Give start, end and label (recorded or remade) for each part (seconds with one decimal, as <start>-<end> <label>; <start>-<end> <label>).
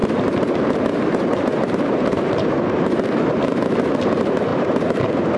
0.0-3.2 remade; 3.2-4.5 recorded; 4.5-5.0 remade; 5.0-5.4 recorded